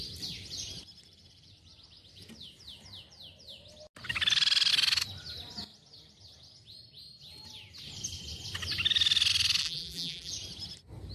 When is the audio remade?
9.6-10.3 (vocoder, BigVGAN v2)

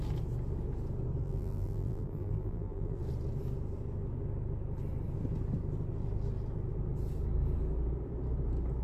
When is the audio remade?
1.2-3.0 (vocoder, BigVGAN v2)

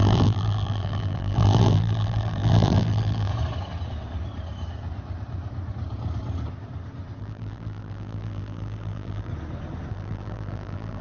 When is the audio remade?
0.0-3.3 (vocoder, BigVGAN v2); 7.2-9.3; 9.9-11.0

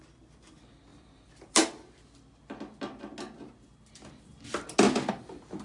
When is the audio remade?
0.9-1.7 (vocoder, BigVGAN v2)

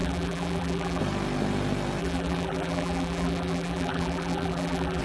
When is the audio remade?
0.0-1.0 (vocoder, BigVGAN v2); 2.0-5.0